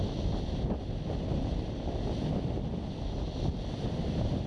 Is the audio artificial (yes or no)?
no